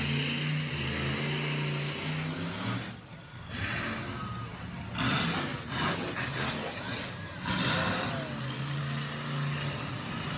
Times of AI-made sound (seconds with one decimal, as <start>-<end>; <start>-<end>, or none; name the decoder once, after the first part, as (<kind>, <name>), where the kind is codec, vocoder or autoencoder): none